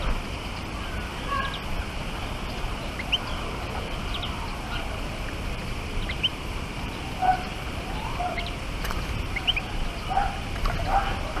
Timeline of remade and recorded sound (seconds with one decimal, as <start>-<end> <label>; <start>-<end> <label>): 0.0-6.3 recorded; 6.3-9.9 remade; 9.9-11.4 recorded